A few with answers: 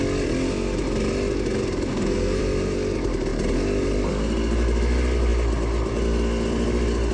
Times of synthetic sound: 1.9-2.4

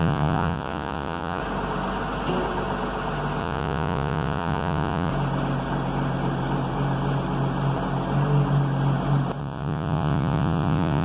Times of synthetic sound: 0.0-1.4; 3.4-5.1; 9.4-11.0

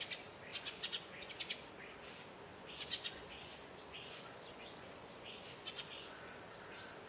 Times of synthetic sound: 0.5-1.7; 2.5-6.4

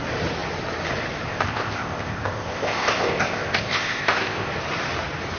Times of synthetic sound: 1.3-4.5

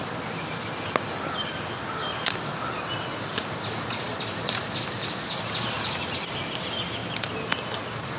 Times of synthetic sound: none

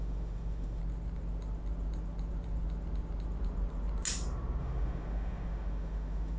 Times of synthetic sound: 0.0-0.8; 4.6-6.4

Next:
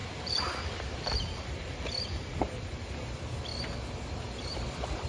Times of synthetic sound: none

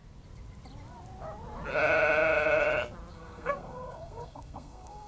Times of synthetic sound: 3.1-5.1